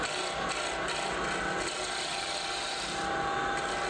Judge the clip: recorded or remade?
recorded